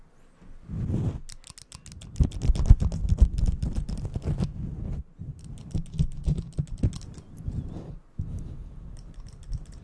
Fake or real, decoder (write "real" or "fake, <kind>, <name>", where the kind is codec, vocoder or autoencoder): real